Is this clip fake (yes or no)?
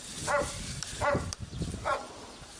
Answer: no